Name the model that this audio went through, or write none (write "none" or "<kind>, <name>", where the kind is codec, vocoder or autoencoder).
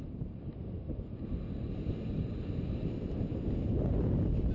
none